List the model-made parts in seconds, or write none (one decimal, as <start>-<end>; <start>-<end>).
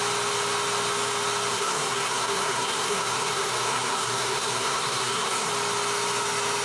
1.5-5.5